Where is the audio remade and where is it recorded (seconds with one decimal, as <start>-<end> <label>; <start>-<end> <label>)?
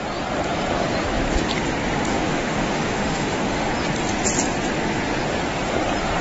0.0-2.1 recorded; 2.1-3.7 remade; 3.7-6.2 recorded